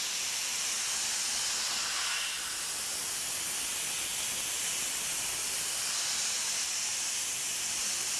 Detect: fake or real real